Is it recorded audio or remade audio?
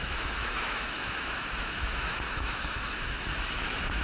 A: remade